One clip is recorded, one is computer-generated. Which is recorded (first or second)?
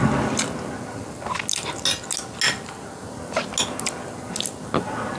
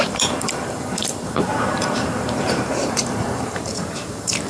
first